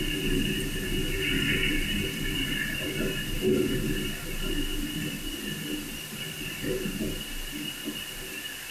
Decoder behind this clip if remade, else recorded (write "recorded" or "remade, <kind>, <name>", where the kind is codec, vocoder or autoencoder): recorded